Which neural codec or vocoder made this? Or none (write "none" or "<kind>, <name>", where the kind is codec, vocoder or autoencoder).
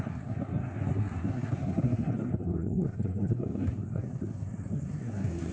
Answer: codec, SNAC